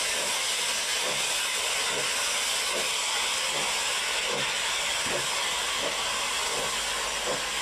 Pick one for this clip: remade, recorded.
recorded